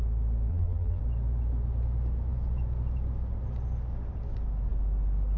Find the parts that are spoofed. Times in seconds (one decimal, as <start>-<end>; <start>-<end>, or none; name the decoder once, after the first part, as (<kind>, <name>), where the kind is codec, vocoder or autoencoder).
0.5-1.0 (vocoder, BigVGAN v2)